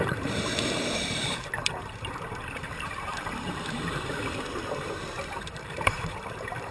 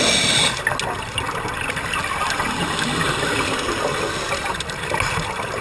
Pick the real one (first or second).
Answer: second